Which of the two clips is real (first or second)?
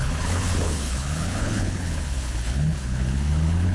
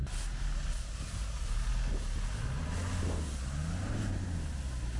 second